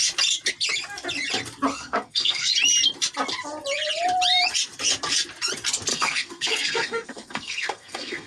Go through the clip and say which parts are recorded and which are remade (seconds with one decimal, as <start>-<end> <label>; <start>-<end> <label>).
0.0-1.7 recorded; 1.7-2.5 remade; 2.5-5.9 recorded; 5.9-8.3 remade